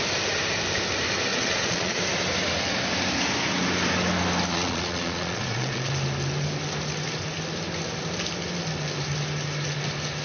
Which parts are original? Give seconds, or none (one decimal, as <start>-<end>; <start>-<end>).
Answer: 0.0-1.3; 2.0-4.5; 5.9-10.2